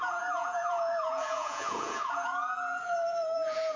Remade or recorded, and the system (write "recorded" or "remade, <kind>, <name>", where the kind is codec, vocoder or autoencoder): remade, vocoder, Vocos